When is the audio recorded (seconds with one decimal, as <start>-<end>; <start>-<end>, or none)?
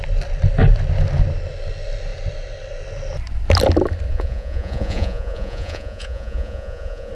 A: 0.0-4.1